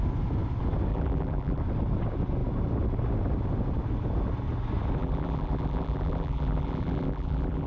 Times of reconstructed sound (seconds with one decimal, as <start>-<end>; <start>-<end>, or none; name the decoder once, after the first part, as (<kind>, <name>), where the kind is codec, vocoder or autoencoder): 0.9-1.6 (vocoder, BigVGAN v2); 5.0-7.7